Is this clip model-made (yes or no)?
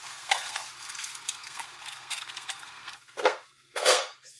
yes